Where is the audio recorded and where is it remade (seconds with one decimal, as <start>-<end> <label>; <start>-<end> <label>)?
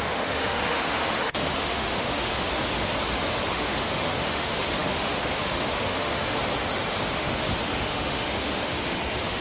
0.0-2.9 remade; 2.9-3.5 recorded; 3.5-6.4 remade; 6.4-7.1 recorded; 7.1-9.4 remade